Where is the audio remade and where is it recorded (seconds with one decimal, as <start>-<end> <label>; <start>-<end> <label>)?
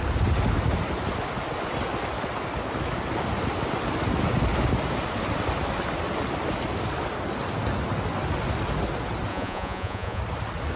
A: 0.0-9.3 recorded; 9.3-10.2 remade; 10.2-10.8 recorded